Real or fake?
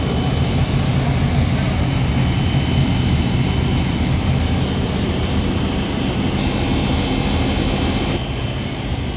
real